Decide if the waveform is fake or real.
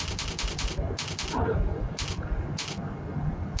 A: real